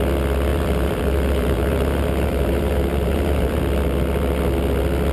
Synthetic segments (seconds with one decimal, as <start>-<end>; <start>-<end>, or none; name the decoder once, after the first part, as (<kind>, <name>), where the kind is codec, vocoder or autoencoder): 0.5-3.6 (vocoder, BigVGAN v2)